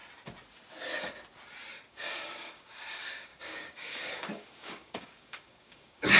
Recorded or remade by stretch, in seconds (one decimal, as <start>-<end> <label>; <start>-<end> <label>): 0.0-1.7 recorded; 1.7-6.2 remade